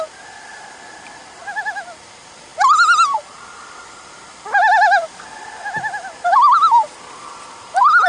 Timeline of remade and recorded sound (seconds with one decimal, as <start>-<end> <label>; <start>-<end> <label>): 0.0-8.1 recorded

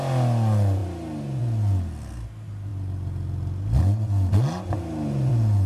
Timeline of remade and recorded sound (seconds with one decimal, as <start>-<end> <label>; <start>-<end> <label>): 0.0-5.7 recorded

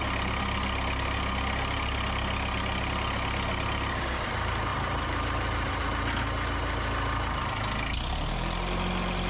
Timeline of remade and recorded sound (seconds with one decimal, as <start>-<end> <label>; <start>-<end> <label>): 0.0-4.7 recorded; 4.7-5.8 remade; 5.8-9.3 recorded

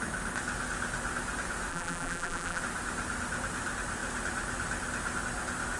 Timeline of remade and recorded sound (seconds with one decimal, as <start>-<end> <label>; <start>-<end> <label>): 0.0-1.7 recorded; 1.7-2.6 remade; 2.6-5.8 recorded